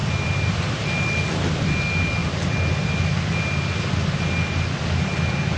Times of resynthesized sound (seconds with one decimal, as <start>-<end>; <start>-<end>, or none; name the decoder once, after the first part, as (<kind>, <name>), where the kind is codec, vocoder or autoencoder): none